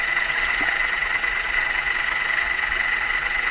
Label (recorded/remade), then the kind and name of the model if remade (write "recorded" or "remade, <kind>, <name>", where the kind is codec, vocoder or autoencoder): remade, vocoder, Vocos